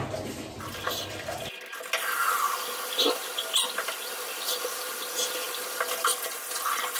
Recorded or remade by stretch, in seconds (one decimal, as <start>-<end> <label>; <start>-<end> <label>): 0.0-7.0 recorded